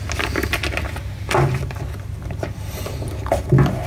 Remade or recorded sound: recorded